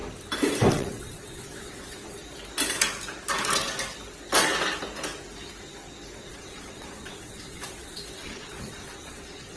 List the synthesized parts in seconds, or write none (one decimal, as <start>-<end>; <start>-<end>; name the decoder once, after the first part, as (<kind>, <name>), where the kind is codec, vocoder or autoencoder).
0.7-2.2 (vocoder, WaveNeXt); 6.3-9.6